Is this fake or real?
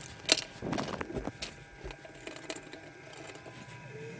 real